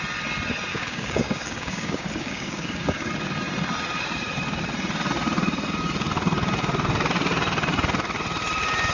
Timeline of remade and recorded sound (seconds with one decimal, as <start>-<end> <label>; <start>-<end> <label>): 0.0-0.7 recorded; 0.7-3.1 remade; 3.1-8.9 recorded

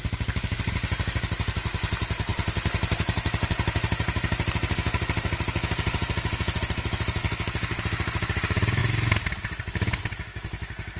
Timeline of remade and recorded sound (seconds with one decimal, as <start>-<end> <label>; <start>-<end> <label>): 0.0-7.2 recorded; 7.2-7.8 remade; 7.8-11.0 recorded